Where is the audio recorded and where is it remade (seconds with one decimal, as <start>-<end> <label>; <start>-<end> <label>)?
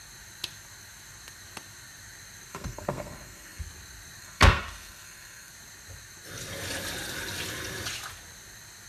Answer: 0.0-2.5 recorded; 2.5-3.6 remade; 3.6-4.2 recorded; 4.2-5.5 remade; 5.5-8.9 recorded